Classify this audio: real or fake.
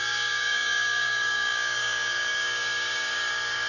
fake